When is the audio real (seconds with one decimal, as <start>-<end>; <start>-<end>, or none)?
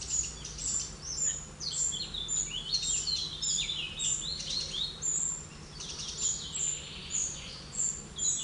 0.0-7.0; 7.9-8.4